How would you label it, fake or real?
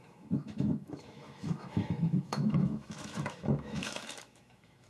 fake